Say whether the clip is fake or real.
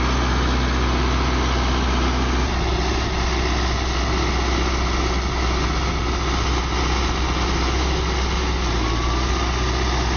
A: real